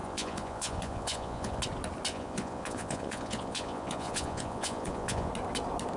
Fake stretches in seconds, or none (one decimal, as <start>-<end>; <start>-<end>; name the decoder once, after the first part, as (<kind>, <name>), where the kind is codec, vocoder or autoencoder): 0.0-1.6 (vocoder, Vocos); 2.1-5.3